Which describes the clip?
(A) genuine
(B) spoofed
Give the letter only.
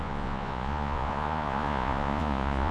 B